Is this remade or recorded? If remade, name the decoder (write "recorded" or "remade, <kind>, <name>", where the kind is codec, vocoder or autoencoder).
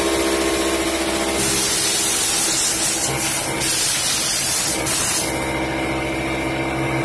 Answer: recorded